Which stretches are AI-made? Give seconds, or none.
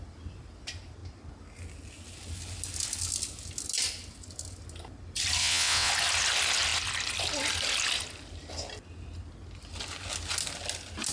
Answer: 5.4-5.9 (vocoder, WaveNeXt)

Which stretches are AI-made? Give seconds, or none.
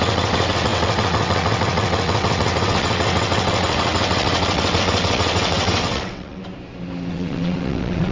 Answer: 0.0-6.4 (vocoder, WaveNeXt); 7.1-8.1